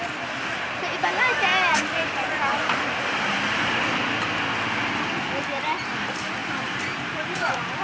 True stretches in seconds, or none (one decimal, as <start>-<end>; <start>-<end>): 0.0-6.4